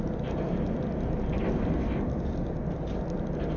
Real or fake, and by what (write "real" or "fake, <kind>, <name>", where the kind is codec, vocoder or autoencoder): real